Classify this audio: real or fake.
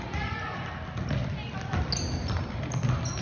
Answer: real